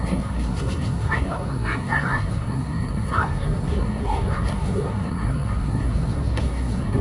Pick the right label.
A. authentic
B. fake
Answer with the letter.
B